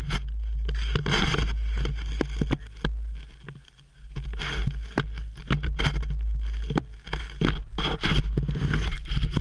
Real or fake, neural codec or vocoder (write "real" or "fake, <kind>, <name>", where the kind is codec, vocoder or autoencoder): real